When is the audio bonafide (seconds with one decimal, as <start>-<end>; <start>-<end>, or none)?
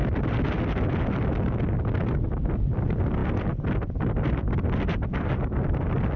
0.0-2.2; 3.2-4.0